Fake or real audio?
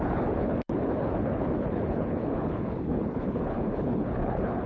fake